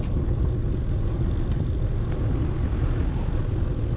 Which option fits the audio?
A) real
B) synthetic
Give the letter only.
A